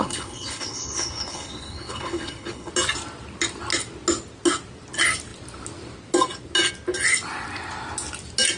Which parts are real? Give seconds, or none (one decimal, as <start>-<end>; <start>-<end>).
2.7-8.6